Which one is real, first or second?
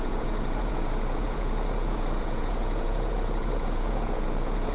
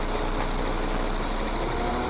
second